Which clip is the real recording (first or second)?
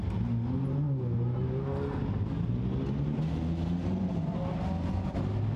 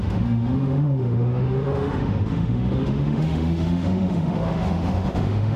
first